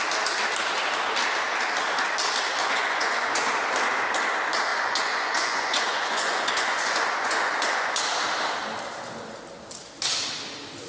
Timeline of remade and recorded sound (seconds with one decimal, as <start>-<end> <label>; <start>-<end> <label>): 0.0-2.6 recorded; 2.6-3.4 remade; 3.4-4.7 recorded; 4.7-8.0 remade; 8.0-10.9 recorded